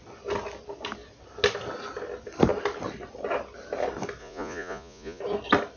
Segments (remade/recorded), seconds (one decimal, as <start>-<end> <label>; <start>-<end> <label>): 0.0-4.2 recorded; 4.2-5.2 remade; 5.2-5.8 recorded